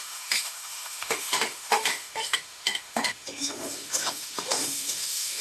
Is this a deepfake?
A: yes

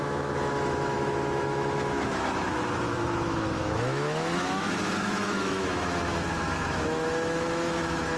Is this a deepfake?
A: yes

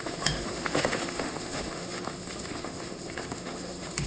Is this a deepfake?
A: yes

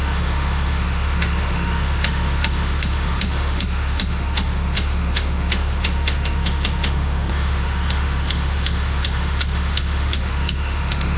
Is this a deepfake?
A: yes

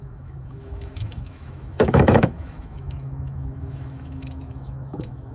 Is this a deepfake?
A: yes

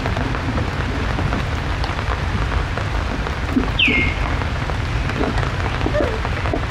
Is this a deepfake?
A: no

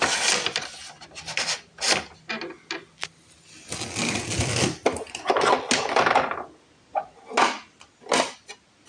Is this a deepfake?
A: no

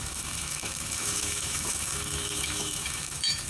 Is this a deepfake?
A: yes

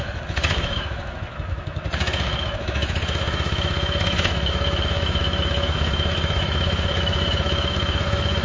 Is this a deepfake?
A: yes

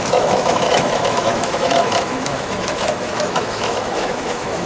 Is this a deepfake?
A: yes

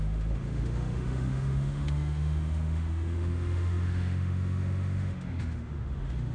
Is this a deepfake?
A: yes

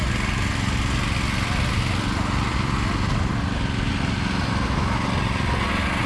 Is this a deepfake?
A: no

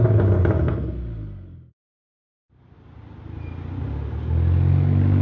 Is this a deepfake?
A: no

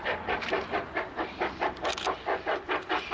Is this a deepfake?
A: no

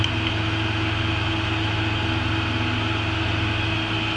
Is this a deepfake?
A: no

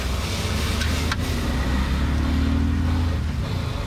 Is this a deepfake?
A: no